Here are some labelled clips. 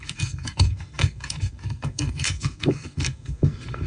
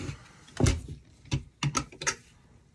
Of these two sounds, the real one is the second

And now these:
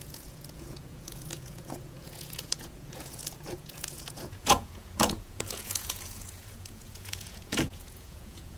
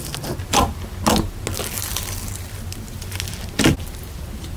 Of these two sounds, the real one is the second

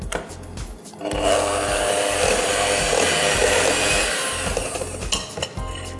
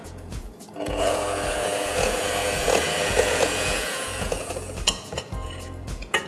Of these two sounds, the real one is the first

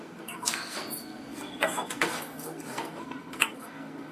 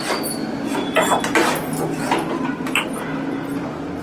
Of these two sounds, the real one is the second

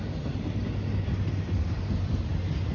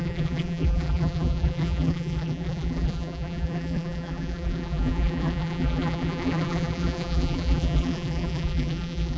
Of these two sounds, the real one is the first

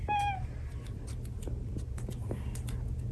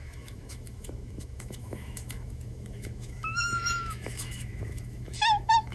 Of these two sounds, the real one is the first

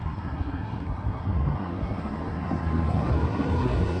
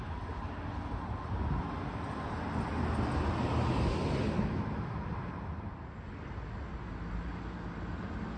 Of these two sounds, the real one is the second